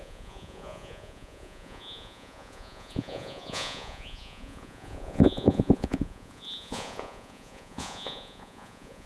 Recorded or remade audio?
remade